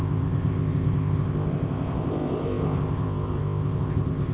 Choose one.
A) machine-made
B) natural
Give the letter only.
A